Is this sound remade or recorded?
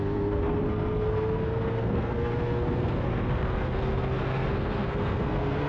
remade